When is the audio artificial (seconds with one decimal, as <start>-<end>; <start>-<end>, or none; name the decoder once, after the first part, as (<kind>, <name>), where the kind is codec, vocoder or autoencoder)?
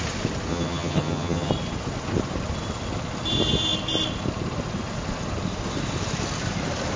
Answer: 0.5-1.5 (vocoder, HiFi-GAN)